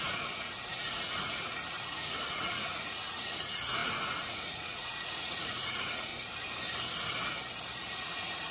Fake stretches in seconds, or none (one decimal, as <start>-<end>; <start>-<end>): 0.0-6.1; 7.9-8.5